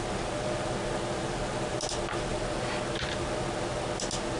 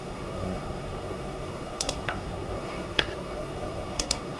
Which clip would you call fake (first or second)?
second